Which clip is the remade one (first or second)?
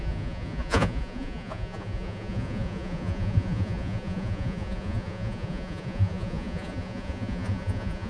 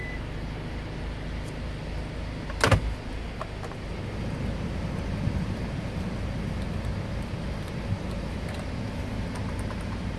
first